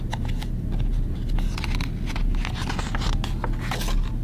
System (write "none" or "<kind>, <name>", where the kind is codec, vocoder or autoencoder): none